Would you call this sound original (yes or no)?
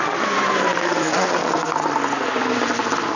yes